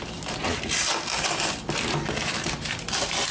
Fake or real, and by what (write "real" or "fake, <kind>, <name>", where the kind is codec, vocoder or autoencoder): real